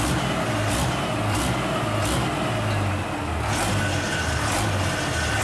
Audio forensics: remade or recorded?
recorded